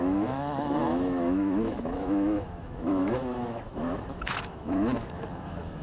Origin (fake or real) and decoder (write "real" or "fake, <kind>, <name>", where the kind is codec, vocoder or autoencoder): fake, autoencoder, DAC-VAE